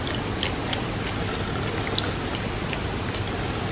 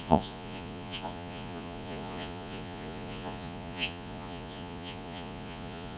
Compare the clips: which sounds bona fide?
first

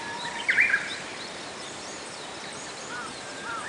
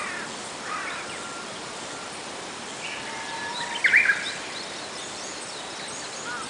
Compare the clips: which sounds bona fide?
second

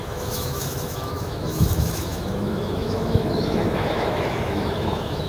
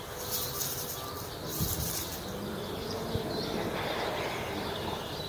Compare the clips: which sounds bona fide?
second